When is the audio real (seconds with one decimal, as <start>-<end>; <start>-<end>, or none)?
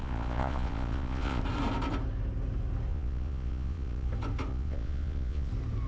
1.4-2.9; 4.1-4.5; 5.5-5.9